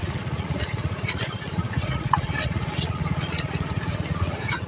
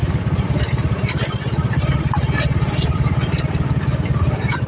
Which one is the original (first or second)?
second